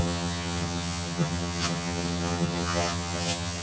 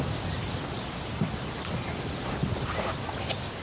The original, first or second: second